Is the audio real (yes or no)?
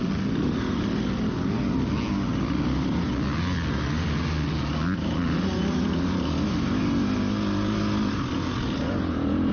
yes